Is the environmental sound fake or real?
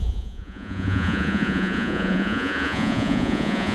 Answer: fake